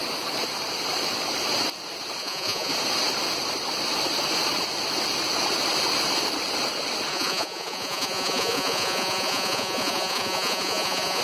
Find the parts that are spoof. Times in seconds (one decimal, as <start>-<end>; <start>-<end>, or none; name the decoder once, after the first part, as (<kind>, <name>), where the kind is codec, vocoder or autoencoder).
2.2-2.7 (vocoder, Vocos); 7.1-11.2